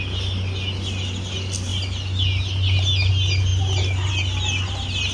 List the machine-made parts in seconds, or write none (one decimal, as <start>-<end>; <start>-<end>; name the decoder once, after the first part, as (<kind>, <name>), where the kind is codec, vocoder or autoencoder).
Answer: none

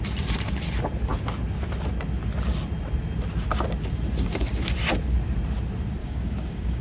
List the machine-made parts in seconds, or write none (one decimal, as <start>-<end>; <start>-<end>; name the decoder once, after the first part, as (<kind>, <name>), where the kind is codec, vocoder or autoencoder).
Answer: 6.0-6.8 (codec, DAC)